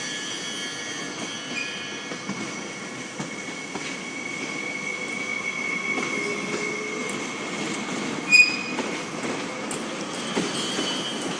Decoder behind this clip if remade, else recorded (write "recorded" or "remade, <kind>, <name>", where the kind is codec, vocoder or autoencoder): recorded